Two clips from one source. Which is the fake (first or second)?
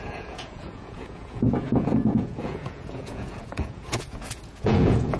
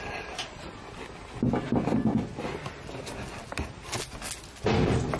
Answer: first